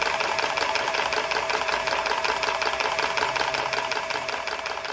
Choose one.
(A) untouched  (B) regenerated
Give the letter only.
B